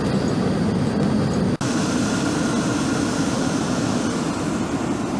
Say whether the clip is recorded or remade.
recorded